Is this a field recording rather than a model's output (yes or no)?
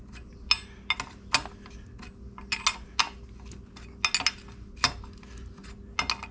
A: yes